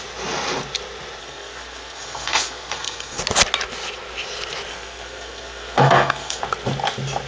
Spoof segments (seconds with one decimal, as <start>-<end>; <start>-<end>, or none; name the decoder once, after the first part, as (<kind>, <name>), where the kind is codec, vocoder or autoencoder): 1.2-3.2 (codec, SNAC); 4.7-6.4